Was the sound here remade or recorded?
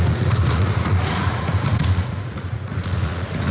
remade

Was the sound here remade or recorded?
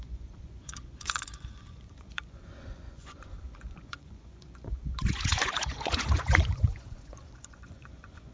remade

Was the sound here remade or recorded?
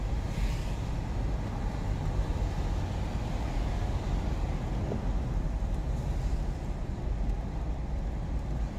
recorded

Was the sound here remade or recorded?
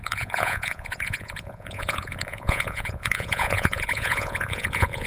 remade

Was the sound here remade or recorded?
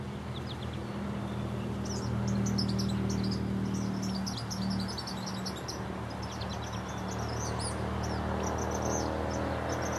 recorded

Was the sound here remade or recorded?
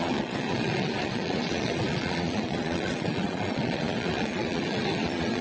remade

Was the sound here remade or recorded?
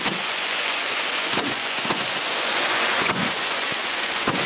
remade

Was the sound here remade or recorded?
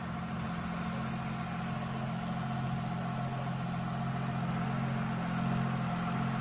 recorded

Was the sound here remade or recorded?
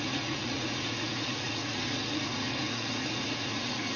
remade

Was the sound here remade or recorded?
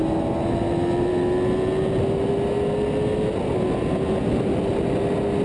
recorded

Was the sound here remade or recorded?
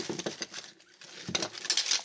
recorded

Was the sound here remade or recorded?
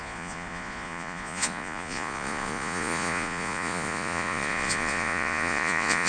remade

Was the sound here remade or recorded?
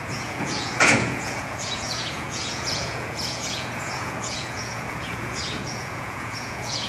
remade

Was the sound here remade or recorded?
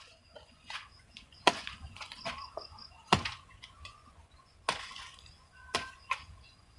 remade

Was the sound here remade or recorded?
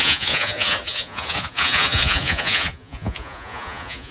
remade